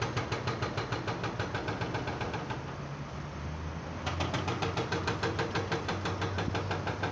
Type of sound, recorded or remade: recorded